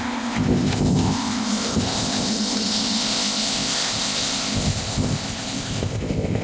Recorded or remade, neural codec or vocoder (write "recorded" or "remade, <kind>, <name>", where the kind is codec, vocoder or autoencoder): remade, codec, ZipCodec